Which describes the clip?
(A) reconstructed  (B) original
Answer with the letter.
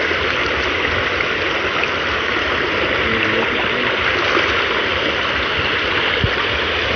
B